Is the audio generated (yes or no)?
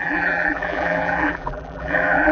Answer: yes